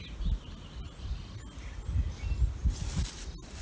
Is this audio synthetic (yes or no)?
no